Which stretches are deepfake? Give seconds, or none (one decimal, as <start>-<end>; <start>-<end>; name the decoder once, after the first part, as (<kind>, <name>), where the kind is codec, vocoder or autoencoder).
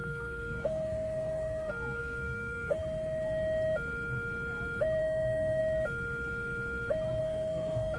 0.0-2.8 (codec, SNAC); 5.0-5.6; 7.2-8.0